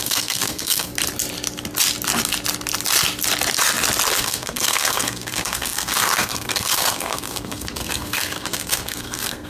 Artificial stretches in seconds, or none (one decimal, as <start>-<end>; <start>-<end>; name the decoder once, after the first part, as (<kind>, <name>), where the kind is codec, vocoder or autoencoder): 0.0-0.9 (codec, SNAC); 4.1-9.5